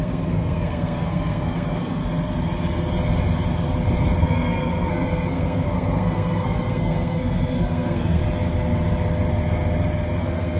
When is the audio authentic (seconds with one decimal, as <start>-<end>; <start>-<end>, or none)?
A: 2.0-4.2; 8.2-10.2